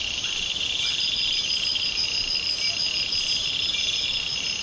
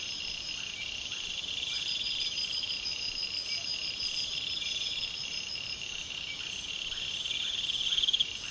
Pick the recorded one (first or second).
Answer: first